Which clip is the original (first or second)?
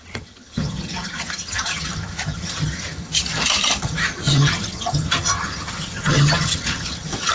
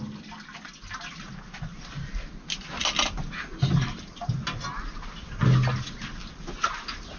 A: second